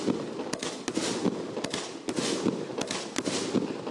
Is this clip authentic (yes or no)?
yes